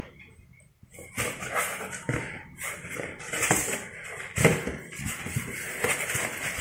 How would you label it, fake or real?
real